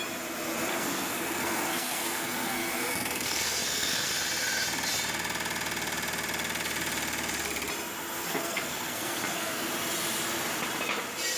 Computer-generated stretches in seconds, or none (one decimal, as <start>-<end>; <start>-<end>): 0.7-4.1; 8.2-9.7